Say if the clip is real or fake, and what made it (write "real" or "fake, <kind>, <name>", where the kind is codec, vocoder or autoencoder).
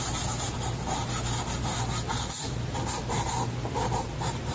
real